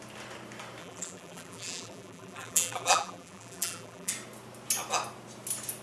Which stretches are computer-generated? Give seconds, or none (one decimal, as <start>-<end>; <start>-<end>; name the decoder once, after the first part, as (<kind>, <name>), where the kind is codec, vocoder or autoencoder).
0.8-4.1 (vocoder, BigVGAN v2)